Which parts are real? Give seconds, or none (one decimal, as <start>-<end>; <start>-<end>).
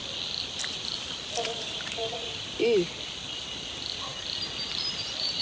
0.0-5.4